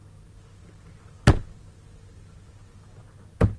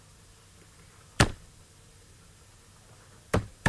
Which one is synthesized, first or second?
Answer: second